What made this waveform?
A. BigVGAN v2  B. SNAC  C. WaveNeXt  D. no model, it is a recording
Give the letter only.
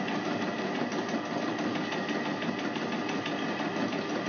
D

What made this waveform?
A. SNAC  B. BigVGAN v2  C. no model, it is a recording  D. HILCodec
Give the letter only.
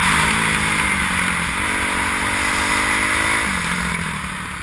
C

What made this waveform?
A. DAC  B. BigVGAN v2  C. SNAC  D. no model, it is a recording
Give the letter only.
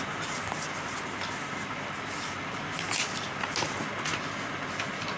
D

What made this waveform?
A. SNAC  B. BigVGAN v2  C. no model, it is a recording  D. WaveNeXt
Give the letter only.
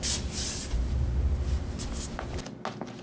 C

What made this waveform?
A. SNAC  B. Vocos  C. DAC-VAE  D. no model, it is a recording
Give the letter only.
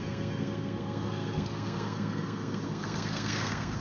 A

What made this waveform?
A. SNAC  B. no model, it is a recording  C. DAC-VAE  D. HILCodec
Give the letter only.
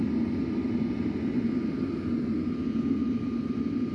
B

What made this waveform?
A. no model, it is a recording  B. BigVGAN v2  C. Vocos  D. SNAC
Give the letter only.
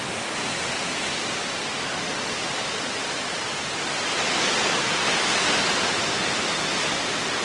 A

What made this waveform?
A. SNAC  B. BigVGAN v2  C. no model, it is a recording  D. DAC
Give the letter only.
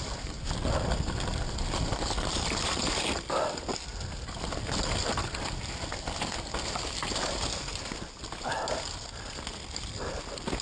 C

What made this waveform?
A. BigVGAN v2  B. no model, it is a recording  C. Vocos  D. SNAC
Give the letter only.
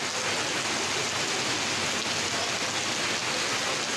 B